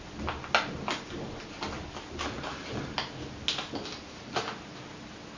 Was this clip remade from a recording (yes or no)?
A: no